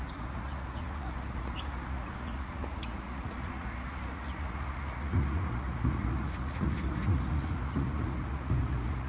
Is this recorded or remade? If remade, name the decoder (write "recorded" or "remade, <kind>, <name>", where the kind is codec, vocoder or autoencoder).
remade, vocoder, Vocos